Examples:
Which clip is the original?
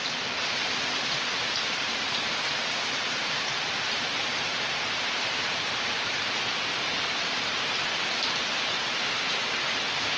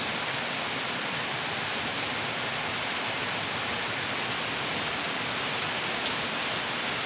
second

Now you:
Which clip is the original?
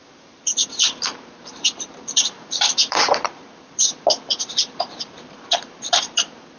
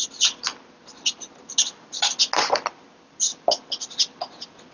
second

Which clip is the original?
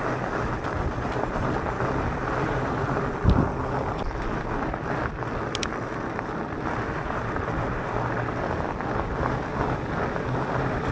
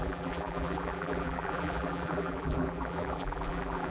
first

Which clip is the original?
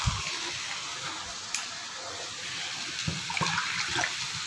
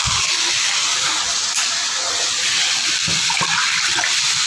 first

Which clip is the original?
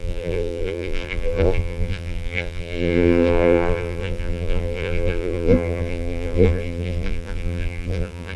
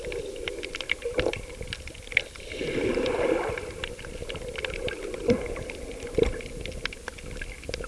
second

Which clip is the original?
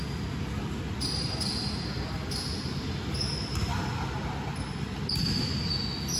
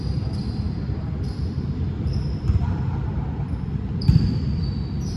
first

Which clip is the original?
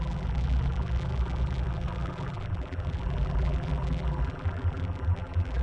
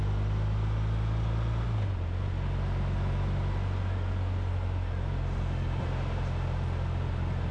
second